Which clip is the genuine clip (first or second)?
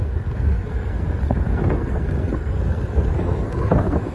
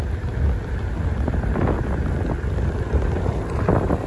second